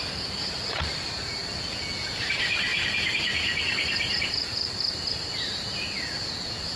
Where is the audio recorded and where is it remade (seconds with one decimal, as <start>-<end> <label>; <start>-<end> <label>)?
0.0-1.4 remade; 1.4-2.2 recorded; 2.2-6.8 remade

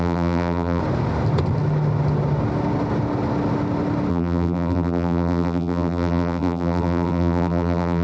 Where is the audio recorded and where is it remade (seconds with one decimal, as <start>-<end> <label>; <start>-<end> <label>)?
0.0-0.8 remade; 0.8-4.1 recorded; 4.1-8.0 remade

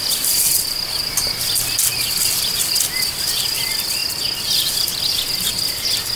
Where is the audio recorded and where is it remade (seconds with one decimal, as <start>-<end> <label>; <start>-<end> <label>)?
0.0-1.9 recorded; 1.9-2.5 remade; 2.5-6.2 recorded

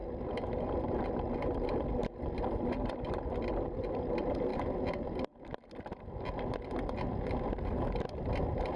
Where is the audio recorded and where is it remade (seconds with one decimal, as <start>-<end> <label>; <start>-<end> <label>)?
0.0-4.5 remade; 4.5-8.0 recorded; 8.0-8.8 remade

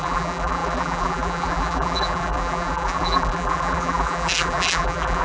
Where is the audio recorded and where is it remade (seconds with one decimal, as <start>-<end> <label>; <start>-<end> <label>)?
0.0-5.2 remade

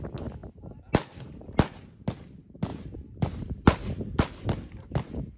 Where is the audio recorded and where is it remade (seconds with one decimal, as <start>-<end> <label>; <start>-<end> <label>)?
0.0-2.7 recorded; 2.7-4.2 remade; 4.2-5.4 recorded